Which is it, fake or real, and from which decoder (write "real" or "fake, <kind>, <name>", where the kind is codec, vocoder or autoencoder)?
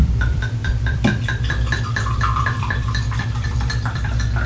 fake, vocoder, BigVGAN v2